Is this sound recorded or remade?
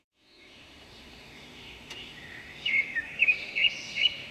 remade